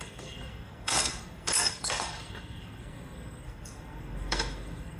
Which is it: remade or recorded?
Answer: remade